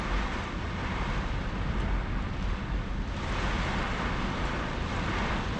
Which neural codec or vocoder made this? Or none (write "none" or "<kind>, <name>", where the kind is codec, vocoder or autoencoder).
none